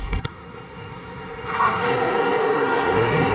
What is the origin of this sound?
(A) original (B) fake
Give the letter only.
B